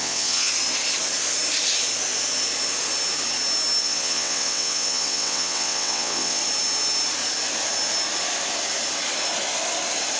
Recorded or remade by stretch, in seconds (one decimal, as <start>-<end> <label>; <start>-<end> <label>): 0.0-0.5 remade; 0.5-3.8 recorded; 3.8-6.4 remade; 6.4-10.2 recorded